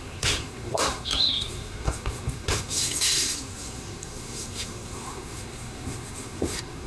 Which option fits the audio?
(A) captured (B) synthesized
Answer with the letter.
B